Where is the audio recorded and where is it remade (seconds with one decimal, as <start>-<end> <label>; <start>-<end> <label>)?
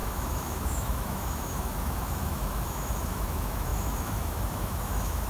0.0-5.3 remade